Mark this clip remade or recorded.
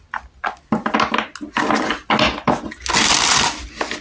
recorded